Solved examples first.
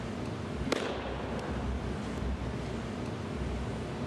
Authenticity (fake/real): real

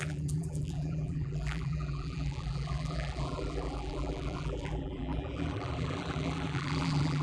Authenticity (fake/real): fake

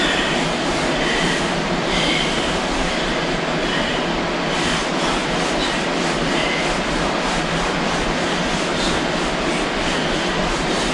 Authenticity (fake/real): fake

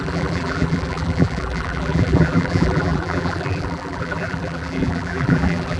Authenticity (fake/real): fake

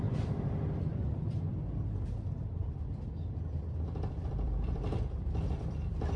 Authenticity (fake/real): fake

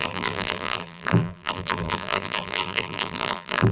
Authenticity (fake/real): fake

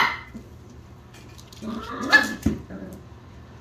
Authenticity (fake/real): fake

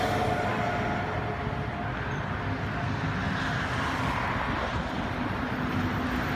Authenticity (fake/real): real